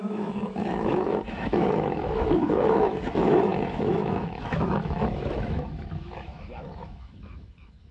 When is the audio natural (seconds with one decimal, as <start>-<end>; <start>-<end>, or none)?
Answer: none